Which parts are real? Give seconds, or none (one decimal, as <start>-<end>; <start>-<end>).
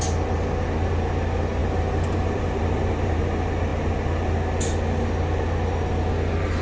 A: 0.0-1.6; 3.2-6.6